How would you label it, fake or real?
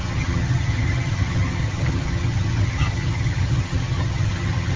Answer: fake